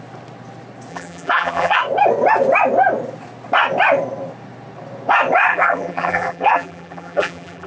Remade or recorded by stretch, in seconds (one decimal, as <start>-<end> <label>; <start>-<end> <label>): 0.0-0.9 recorded; 0.9-1.8 remade; 1.8-5.5 recorded; 5.5-7.7 remade

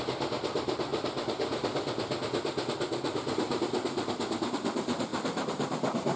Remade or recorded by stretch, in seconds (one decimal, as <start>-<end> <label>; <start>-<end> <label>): 0.0-0.9 remade; 0.9-4.4 recorded; 4.4-6.2 remade

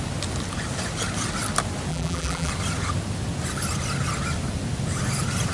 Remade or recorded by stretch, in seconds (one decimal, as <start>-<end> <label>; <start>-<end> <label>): 0.0-1.9 recorded; 1.9-2.5 remade; 2.5-5.5 recorded

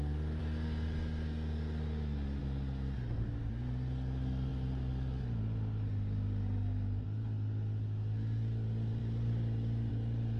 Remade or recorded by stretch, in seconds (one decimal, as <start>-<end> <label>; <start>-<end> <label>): 0.0-10.4 recorded

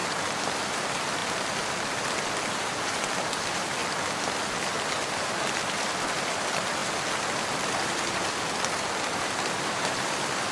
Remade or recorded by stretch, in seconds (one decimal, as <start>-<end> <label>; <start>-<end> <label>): 0.0-3.8 remade; 3.8-5.6 recorded; 5.6-10.5 remade

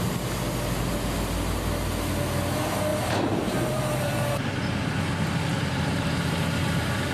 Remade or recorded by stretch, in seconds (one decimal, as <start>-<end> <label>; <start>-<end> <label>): 0.0-2.9 recorded; 2.9-5.0 remade; 5.0-5.5 recorded; 5.5-7.1 remade

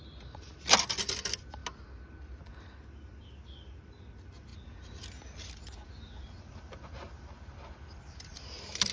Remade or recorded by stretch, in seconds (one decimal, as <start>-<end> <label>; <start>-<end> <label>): 0.0-8.9 recorded